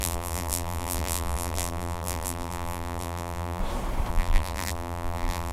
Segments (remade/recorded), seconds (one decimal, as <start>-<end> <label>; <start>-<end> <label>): 0.0-3.6 remade; 3.6-4.1 recorded; 4.1-5.5 remade